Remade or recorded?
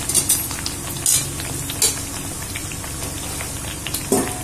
recorded